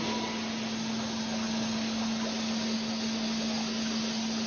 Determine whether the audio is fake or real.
real